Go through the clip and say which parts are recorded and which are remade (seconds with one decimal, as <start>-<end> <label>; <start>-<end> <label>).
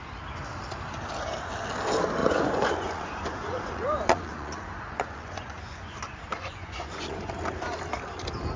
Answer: 0.0-2.2 recorded; 2.2-7.3 remade; 7.3-8.6 recorded